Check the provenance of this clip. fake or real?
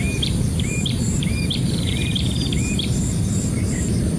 fake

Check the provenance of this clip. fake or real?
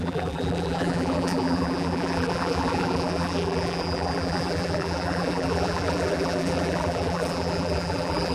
fake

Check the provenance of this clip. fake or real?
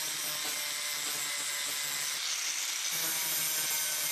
real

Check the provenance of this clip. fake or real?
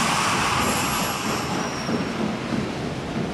real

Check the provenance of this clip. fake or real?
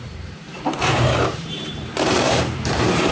fake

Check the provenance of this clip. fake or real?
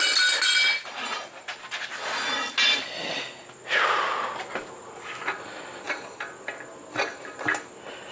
real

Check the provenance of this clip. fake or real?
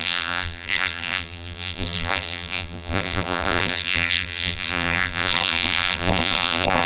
fake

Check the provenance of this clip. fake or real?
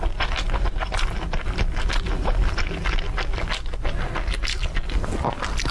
real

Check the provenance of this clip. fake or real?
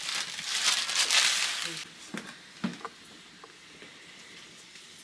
real